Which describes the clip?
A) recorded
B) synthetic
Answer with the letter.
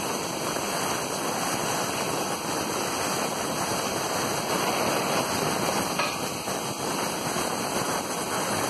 A